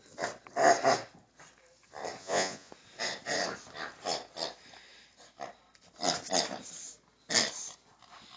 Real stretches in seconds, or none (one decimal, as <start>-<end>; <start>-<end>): 0.0-2.2; 2.7-8.4